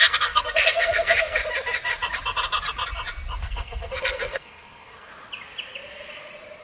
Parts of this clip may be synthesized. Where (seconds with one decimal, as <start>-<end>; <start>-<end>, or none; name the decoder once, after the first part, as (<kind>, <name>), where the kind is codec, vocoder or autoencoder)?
0.0-1.4 (codec, SNAC); 3.4-5.1